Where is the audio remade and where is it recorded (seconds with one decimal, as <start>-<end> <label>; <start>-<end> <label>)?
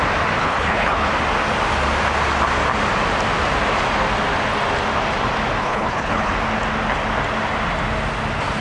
0.0-0.4 recorded; 0.4-1.1 remade; 1.1-5.6 recorded; 5.6-6.3 remade; 6.3-8.6 recorded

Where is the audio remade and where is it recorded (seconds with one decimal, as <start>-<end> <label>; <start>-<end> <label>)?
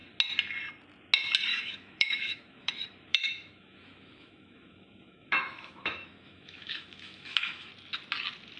0.0-1.5 recorded; 1.5-2.7 remade; 2.7-3.1 recorded; 3.1-7.7 remade; 7.7-8.6 recorded